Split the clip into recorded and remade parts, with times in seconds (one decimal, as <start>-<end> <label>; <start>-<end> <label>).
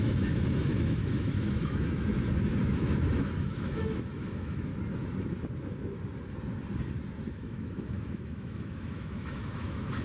0.0-2.1 remade; 2.1-2.6 recorded; 2.6-4.7 remade; 4.7-7.3 recorded; 7.3-10.0 remade